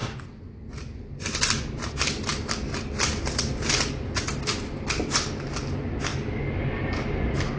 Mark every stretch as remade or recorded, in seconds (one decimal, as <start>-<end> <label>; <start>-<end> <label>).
0.0-7.6 recorded